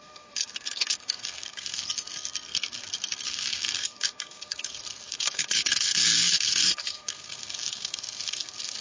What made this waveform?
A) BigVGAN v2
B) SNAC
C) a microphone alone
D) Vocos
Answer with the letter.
B